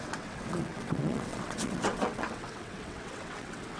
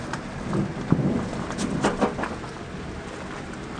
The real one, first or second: second